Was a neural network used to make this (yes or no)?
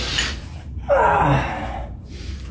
no